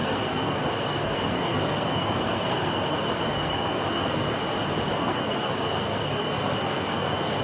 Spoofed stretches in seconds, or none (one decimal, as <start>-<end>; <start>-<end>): 0.0-4.4; 5.0-7.4